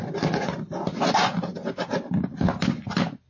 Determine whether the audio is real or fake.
real